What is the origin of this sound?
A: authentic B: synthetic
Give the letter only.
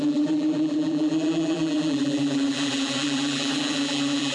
B